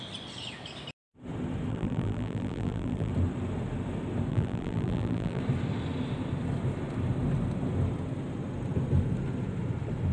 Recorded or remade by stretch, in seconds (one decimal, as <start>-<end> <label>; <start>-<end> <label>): 0.0-1.7 recorded; 1.7-3.1 remade; 3.1-4.3 recorded; 4.3-5.4 remade; 5.4-10.1 recorded